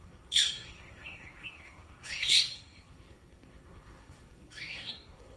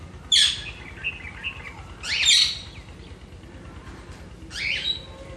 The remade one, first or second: first